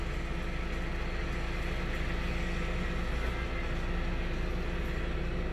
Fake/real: real